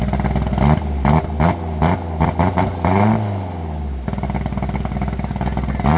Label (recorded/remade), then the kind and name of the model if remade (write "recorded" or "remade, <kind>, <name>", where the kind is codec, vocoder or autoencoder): recorded